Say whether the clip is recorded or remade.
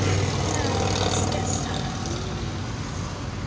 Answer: recorded